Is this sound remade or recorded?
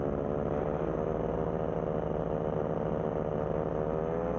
recorded